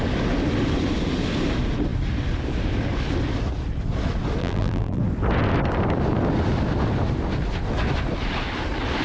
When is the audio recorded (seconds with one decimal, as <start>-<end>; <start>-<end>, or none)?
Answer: 0.0-4.4; 5.0-9.0